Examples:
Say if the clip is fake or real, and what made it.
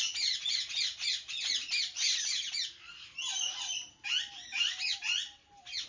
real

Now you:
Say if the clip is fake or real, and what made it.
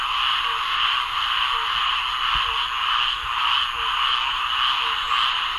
real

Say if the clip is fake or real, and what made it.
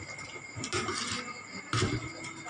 real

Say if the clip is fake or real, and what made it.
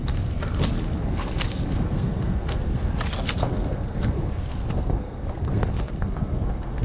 fake, codec, SNAC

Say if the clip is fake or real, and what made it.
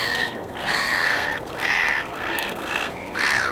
fake, codec, SNAC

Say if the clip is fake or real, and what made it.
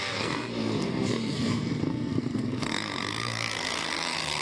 fake, codec, SNAC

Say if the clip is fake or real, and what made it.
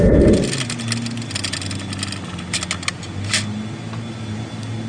real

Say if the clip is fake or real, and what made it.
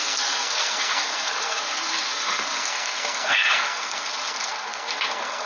fake, codec, SNAC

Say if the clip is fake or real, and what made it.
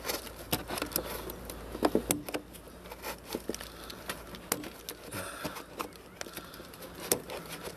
real